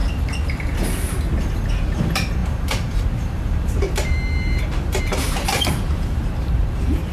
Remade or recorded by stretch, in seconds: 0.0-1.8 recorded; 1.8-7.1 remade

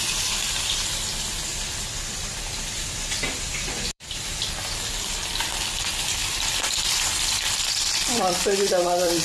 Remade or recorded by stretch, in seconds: 0.0-9.2 remade

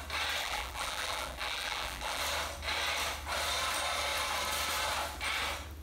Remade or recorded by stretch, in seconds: 0.0-0.4 recorded; 0.4-2.2 remade; 2.2-5.8 recorded

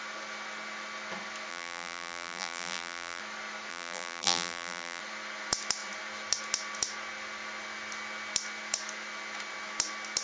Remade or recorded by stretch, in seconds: 0.0-1.5 recorded; 1.5-3.2 remade; 3.2-3.7 recorded; 3.7-5.0 remade; 5.0-10.2 recorded

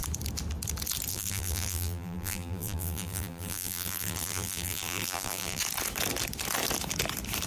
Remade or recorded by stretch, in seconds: 0.0-1.1 recorded; 1.1-5.6 remade; 5.6-7.5 recorded

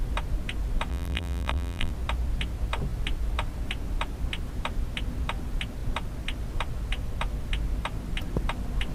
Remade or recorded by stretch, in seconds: 0.0-0.9 recorded; 0.9-1.9 remade; 1.9-8.9 recorded

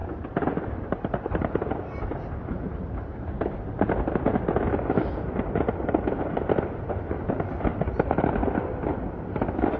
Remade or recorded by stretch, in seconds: 0.0-2.3 remade; 2.3-9.8 recorded

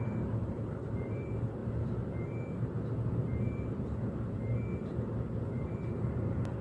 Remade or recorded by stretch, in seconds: 0.0-1.6 remade; 1.6-5.5 recorded; 5.5-6.6 remade